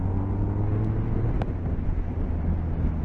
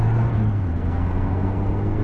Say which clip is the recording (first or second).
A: first